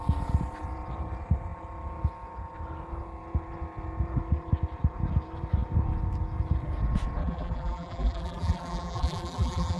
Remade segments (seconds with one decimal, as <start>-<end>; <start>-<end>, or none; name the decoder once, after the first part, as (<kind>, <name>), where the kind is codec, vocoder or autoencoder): 7.2-9.8 (vocoder, BigVGAN v2)